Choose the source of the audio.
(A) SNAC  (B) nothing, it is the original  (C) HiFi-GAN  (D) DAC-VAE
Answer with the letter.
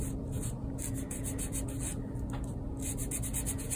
B